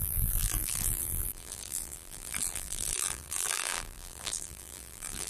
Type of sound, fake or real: fake